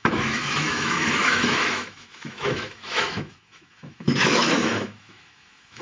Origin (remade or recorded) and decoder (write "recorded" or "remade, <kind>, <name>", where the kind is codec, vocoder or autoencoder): remade, autoencoder, DAC-VAE